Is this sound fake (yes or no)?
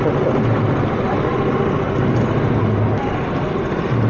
no